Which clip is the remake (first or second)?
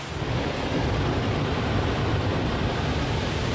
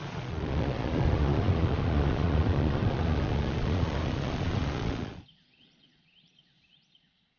second